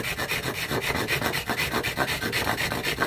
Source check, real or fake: real